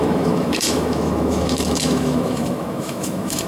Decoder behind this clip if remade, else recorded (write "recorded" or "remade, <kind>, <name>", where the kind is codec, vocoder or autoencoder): remade, autoencoder, DAC-VAE